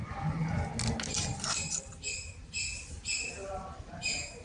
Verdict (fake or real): real